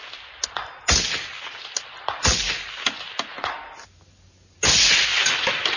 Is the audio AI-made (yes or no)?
no